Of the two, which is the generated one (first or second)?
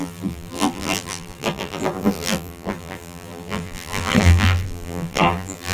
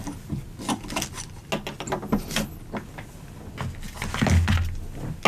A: first